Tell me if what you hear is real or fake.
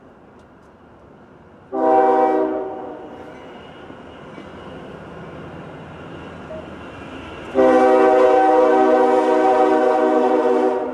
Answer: real